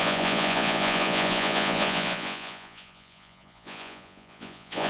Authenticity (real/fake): fake